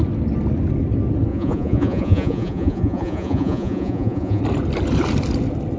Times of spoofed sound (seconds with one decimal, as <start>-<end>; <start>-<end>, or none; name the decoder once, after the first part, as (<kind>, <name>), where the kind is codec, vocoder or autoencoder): 1.3-4.4 (vocoder, Vocos)